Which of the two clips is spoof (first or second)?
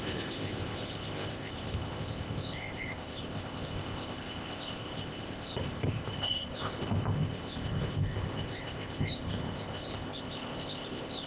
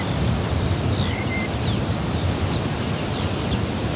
first